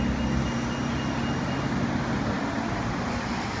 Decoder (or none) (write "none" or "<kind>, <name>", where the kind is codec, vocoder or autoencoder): none